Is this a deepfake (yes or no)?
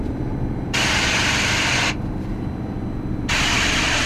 yes